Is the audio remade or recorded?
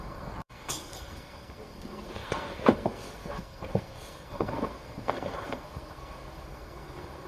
remade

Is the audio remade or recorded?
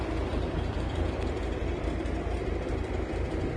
recorded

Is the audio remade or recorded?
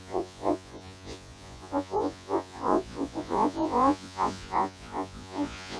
remade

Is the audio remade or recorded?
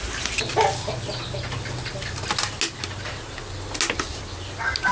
recorded